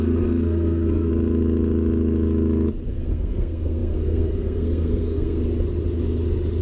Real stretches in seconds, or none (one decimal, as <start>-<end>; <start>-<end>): 1.1-2.9; 5.4-6.6